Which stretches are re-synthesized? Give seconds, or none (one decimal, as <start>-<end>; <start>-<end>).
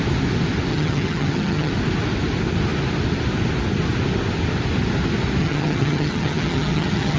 0.7-1.7; 5.4-7.2